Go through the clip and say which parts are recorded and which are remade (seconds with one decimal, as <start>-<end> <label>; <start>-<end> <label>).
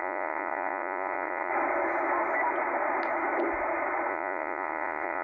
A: 0.0-1.5 remade; 1.5-4.1 recorded; 4.1-5.2 remade